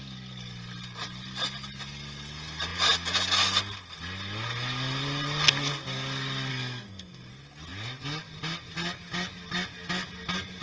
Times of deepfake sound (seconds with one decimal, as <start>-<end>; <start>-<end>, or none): 6.5-7.3